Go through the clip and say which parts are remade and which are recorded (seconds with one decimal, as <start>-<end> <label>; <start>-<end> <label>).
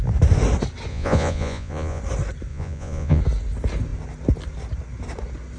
0.0-0.9 recorded; 0.9-2.0 remade; 2.0-2.5 recorded; 2.5-3.2 remade; 3.2-5.6 recorded